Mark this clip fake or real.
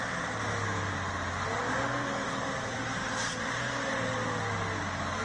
real